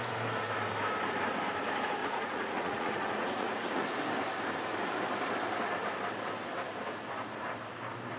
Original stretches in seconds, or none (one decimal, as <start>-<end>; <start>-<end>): 0.0-2.0; 3.8-8.2